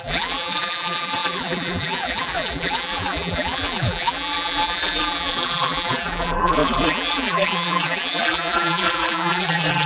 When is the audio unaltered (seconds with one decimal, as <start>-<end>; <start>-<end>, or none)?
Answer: none